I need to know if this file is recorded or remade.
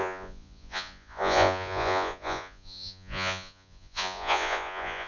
remade